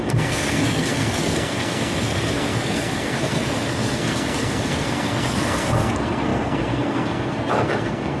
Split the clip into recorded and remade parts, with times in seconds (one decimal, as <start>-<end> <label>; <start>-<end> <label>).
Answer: 0.0-8.2 remade